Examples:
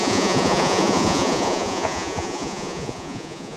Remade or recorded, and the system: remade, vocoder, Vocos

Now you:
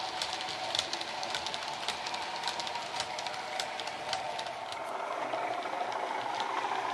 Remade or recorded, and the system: recorded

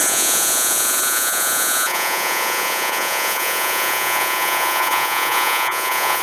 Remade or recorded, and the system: remade, vocoder, Vocos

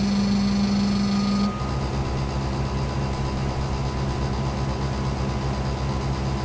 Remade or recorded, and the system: recorded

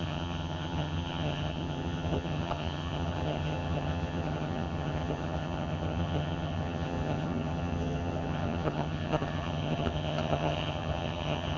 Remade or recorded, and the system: remade, vocoder, HiFi-GAN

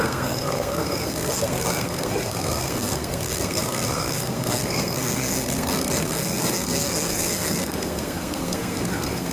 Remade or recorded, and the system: remade, codec, SNAC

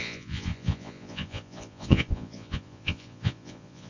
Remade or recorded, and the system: remade, vocoder, Vocos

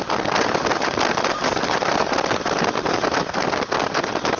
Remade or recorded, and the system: recorded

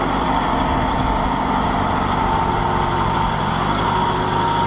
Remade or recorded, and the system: recorded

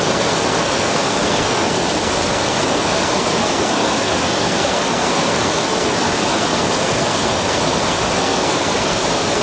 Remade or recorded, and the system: remade, codec, SNAC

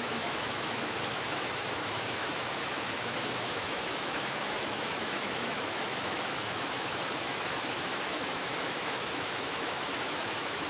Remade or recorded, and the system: remade, autoencoder, DAC-VAE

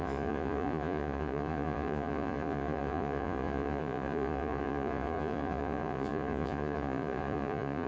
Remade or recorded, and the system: remade, vocoder, Vocos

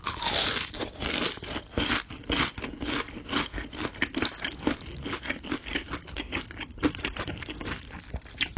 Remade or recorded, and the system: recorded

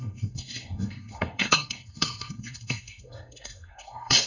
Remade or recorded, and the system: remade, codec, SNAC